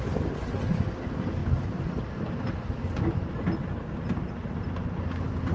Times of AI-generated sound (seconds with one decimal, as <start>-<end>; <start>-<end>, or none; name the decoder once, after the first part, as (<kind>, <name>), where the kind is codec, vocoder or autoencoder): none